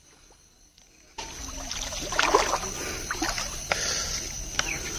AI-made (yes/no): no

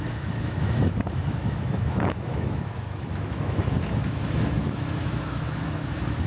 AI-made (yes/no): yes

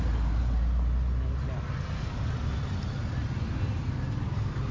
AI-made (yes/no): no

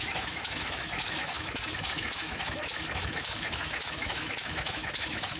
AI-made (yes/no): yes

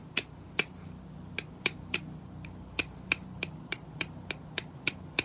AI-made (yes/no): no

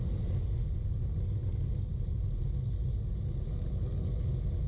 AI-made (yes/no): no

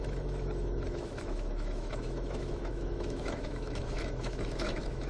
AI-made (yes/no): yes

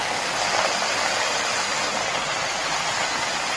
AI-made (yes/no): no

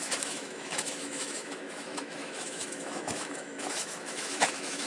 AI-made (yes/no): yes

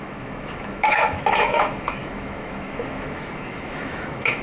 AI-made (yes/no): yes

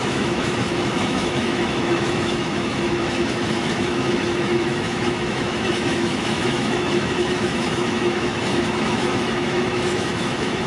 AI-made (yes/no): yes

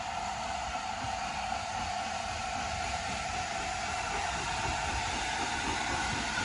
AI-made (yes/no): no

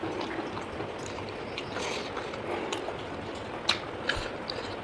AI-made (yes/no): no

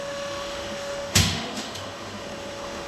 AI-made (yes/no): yes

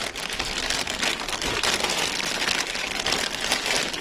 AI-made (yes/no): no